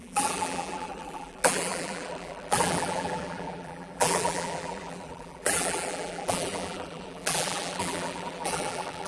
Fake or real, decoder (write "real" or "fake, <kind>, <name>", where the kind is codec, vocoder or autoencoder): fake, vocoder, BigVGAN v2